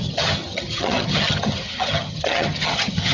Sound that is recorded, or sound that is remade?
remade